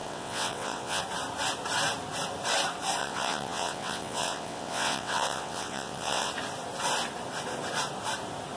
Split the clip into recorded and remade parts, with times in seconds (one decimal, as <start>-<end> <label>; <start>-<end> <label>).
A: 0.0-1.0 remade; 1.0-3.0 recorded; 3.0-6.3 remade; 6.3-8.6 recorded